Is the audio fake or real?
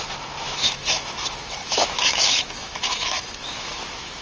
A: fake